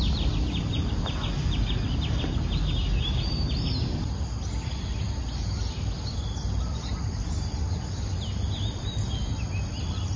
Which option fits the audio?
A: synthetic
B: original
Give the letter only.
B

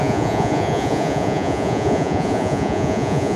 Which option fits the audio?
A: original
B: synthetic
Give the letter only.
B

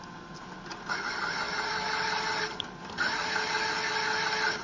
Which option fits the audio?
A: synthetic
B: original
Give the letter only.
B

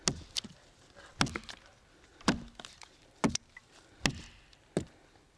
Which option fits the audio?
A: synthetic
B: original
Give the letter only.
B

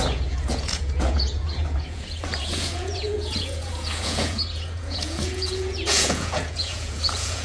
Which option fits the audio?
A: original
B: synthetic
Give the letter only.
B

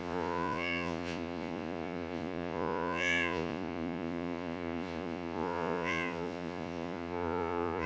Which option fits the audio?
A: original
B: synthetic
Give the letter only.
B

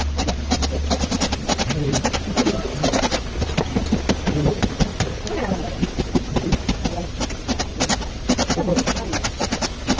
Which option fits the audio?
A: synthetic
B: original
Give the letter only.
B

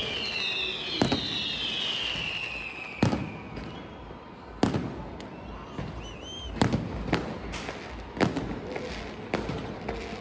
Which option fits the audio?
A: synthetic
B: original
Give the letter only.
B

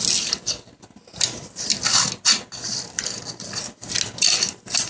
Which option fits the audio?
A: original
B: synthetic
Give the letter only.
A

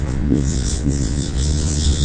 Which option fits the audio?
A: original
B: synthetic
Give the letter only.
B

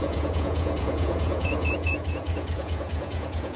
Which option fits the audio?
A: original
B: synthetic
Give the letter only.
B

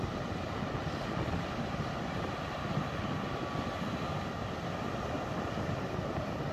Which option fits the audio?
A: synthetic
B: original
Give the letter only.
B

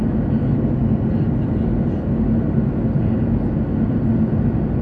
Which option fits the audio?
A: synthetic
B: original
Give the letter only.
B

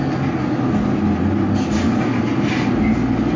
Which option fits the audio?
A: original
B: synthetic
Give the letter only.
A